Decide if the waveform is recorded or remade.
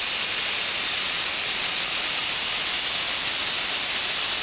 recorded